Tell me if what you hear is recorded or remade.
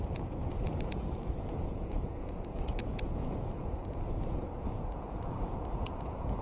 remade